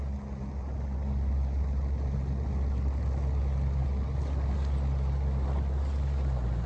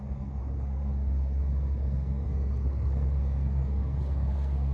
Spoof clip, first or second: second